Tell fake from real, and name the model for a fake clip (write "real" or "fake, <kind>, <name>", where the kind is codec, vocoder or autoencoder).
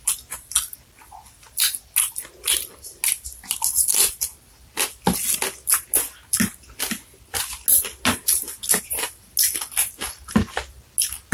real